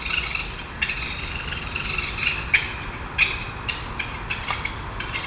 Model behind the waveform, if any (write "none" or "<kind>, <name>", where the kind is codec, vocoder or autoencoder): none